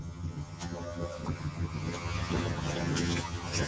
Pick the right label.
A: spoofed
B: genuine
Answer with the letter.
A